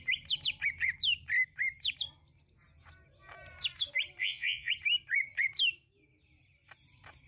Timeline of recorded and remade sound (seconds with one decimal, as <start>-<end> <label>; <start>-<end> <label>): 0.0-4.2 recorded; 4.2-4.7 remade; 4.7-7.3 recorded